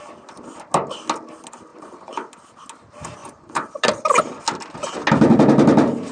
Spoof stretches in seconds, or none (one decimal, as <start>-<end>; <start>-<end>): 1.7-2.3; 3.2-3.7